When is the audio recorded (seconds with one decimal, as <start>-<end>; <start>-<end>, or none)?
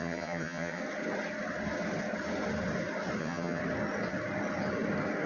0.8-3.2; 3.6-5.3